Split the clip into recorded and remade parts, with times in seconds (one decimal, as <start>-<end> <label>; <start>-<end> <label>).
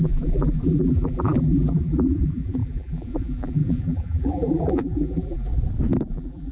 0.0-5.5 remade; 5.5-6.1 recorded; 6.1-6.5 remade